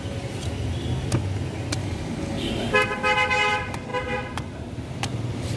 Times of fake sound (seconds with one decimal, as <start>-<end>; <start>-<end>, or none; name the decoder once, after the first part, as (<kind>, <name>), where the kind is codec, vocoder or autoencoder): 1.8-2.5 (codec, DAC)